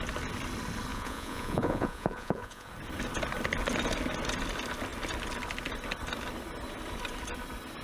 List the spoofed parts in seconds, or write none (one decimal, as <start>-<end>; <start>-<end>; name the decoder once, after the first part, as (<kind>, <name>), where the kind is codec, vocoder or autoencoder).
0.9-2.7 (vocoder, Vocos)